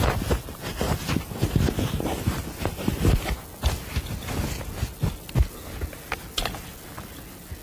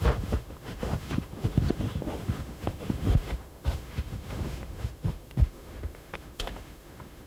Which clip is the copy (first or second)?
second